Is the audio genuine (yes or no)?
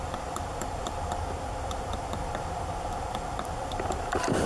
no